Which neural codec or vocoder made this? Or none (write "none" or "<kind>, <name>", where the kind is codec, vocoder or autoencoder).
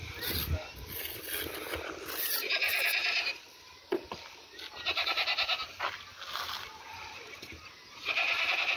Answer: none